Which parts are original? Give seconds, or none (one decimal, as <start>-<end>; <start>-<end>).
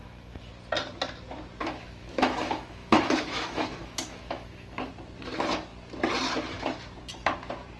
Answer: 0.5-1.6; 4.9-7.8